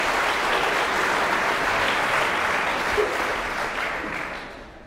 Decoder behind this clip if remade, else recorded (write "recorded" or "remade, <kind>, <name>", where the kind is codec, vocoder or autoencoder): remade, vocoder, BigVGAN v2